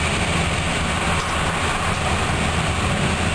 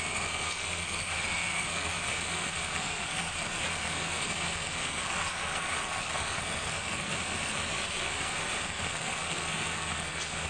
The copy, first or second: second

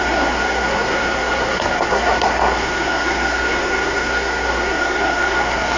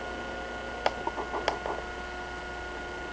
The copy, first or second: first